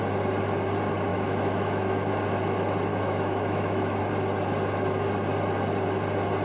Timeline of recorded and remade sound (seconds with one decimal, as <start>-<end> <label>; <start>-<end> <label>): 0.0-1.1 recorded; 1.1-2.1 remade; 2.1-2.9 recorded; 2.9-4.0 remade; 4.0-6.4 recorded